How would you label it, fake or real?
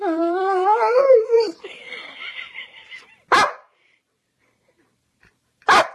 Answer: fake